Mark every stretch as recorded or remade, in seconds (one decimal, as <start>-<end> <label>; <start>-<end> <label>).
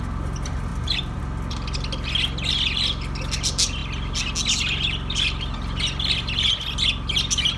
0.0-0.7 recorded; 0.7-1.2 remade; 1.2-7.6 recorded